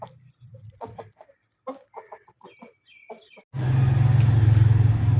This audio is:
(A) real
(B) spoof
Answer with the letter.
A